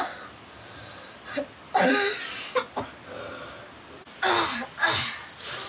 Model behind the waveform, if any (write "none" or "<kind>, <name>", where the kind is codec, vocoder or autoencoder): none